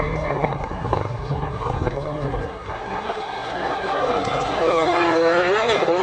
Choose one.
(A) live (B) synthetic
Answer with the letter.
B